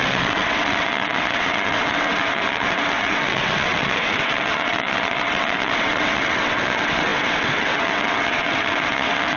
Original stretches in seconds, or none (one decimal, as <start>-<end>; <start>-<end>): none